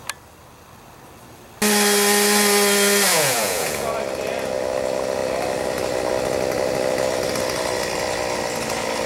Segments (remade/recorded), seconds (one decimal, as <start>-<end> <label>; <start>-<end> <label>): 0.0-3.1 recorded; 3.1-3.9 remade; 3.9-9.1 recorded

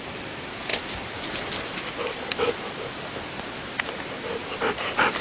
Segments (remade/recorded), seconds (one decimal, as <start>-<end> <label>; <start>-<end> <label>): 0.0-5.2 recorded

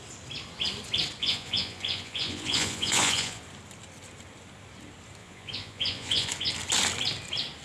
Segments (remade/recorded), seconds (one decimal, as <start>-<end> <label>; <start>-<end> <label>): 0.0-1.2 recorded; 1.2-3.4 remade; 3.4-5.2 recorded; 5.2-6.5 remade; 6.5-7.6 recorded